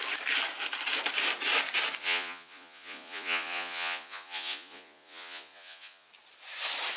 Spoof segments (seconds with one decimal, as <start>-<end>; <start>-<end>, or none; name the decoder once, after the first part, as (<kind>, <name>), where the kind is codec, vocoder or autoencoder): 2.0-6.1 (vocoder, Vocos)